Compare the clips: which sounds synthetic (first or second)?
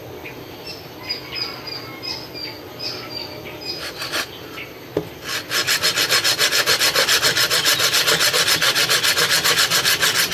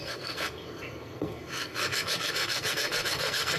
second